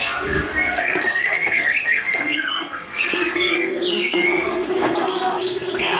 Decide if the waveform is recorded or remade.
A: remade